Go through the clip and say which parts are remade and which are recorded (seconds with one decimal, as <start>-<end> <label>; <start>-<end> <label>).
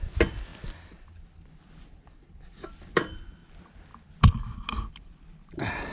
0.0-0.5 recorded; 0.5-3.5 remade; 3.5-5.9 recorded